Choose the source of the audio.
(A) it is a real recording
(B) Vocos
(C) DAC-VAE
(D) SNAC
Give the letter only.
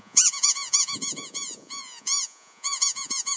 B